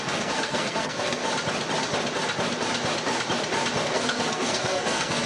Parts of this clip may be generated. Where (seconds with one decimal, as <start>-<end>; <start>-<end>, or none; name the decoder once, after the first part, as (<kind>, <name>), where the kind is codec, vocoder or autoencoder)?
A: 0.0-1.2 (codec, SNAC); 3.8-5.3